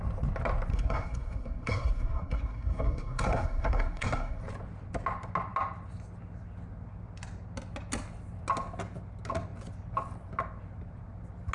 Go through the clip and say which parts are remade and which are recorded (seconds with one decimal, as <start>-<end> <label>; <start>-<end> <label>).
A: 0.0-0.7 recorded; 0.7-4.4 remade; 4.4-11.5 recorded